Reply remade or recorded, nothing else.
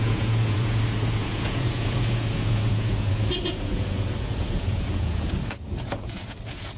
remade